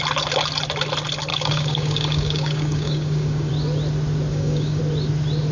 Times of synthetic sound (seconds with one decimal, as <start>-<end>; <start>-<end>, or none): 1.3-3.5; 4.3-4.8